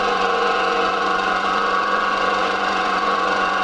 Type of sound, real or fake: fake